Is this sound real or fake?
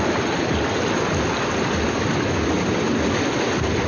real